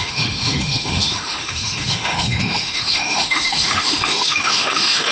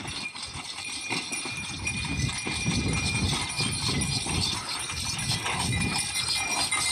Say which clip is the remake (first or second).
first